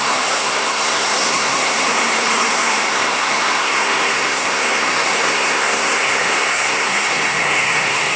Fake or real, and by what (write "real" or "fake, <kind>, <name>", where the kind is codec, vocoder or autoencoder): fake, codec, SNAC